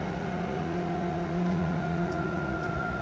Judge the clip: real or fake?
fake